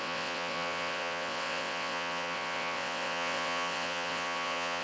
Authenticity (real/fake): fake